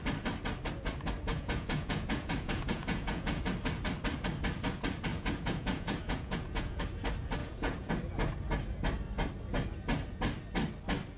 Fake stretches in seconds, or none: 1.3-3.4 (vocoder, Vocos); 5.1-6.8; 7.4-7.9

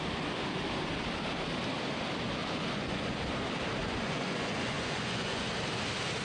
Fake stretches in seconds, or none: 2.4-3.2 (vocoder, Vocos); 3.8-5.5

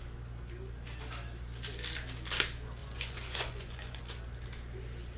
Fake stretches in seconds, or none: 2.8-4.0 (vocoder, Vocos)

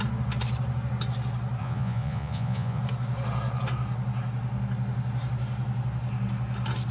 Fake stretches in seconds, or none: 1.6-2.8 (vocoder, Vocos)

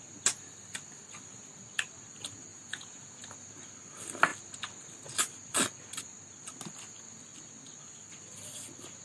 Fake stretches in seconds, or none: 2.5-3.2 (vocoder, Vocos)

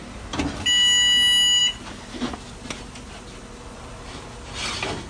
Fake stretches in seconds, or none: none

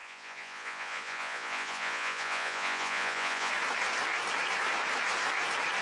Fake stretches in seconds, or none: 0.0-3.5 (vocoder, Vocos)